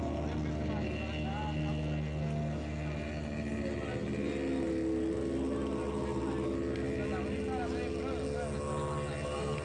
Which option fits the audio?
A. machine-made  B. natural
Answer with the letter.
B